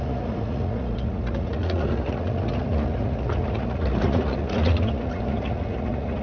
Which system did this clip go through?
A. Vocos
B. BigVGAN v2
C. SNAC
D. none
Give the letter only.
A